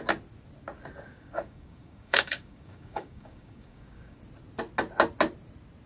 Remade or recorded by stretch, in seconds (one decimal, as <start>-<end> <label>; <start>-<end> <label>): 0.0-1.1 recorded; 1.1-4.2 remade; 4.2-5.9 recorded